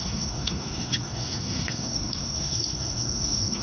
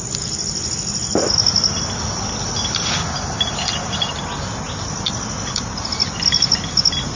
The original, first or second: second